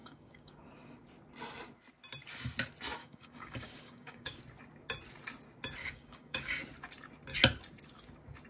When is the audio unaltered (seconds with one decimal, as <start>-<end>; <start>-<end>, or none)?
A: 0.5-3.0; 4.4-5.8; 6.6-8.5